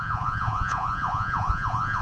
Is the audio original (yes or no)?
no